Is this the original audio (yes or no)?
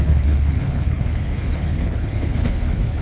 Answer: no